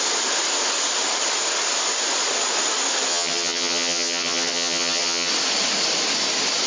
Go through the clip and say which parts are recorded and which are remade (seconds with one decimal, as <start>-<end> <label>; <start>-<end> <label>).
0.0-3.1 recorded; 3.1-5.3 remade; 5.3-6.7 recorded